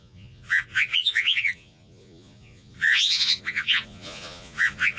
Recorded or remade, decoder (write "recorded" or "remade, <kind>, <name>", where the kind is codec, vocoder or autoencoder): remade, vocoder, Vocos